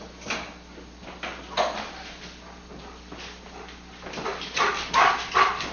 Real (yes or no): yes